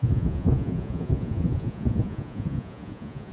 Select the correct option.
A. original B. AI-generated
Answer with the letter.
B